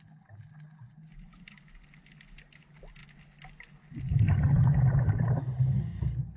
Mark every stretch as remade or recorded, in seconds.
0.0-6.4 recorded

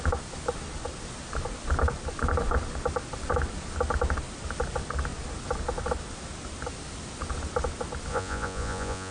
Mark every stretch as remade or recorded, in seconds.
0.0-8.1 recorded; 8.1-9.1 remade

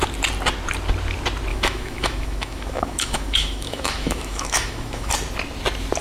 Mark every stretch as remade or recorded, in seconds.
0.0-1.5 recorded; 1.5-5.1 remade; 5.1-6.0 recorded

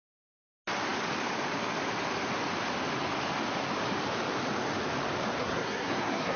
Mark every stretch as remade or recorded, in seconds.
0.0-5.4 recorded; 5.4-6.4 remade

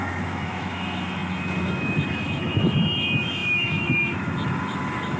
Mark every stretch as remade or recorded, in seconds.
0.0-5.2 remade

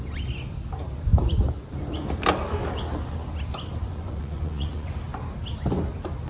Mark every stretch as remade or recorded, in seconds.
0.0-3.8 recorded; 3.8-5.0 remade; 5.0-6.3 recorded

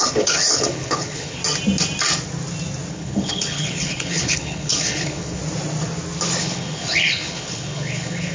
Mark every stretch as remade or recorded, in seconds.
0.0-1.4 remade; 1.4-2.9 recorded; 2.9-5.4 remade; 5.4-6.4 recorded; 6.4-8.3 remade